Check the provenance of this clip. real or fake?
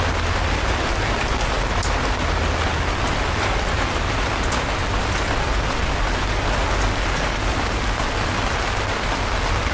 real